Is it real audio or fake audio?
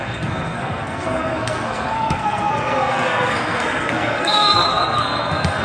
fake